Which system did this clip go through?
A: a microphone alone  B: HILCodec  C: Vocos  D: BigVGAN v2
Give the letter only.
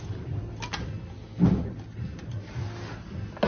A